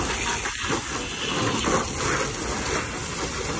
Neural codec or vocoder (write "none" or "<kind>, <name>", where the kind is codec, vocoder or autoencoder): none